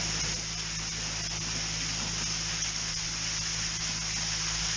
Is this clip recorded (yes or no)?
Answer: yes